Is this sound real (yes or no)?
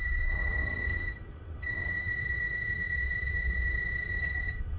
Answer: no